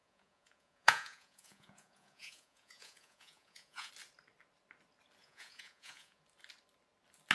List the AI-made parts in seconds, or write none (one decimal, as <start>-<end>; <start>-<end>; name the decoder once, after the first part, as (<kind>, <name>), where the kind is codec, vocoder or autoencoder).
0.0-3.9 (vocoder, Vocos); 5.2-6.2